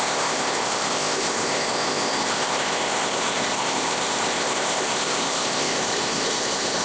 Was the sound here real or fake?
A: fake